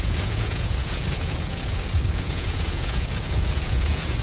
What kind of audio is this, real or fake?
fake